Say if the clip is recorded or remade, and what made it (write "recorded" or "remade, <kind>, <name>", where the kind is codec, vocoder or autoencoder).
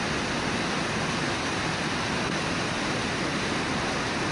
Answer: recorded